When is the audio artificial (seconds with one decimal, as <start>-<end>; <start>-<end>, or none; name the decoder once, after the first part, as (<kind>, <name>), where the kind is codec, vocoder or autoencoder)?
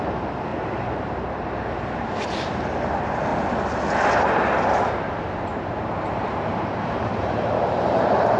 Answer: 0.5-2.2 (vocoder, BigVGAN v2); 5.5-8.4